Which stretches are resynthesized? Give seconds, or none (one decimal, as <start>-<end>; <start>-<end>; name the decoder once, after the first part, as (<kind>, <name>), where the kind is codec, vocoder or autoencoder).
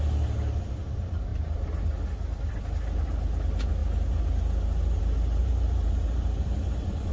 5.4-6.6 (vocoder, BigVGAN v2)